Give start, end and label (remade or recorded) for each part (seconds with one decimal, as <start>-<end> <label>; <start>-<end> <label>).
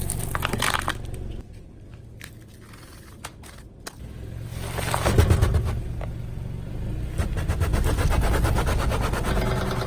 0.0-9.9 recorded